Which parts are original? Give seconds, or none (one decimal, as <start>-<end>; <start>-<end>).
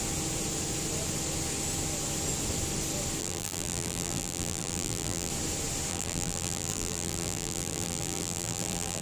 0.0-3.2; 5.3-5.9